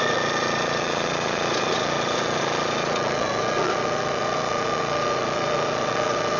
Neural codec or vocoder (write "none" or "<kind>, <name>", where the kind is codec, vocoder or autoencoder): vocoder, Vocos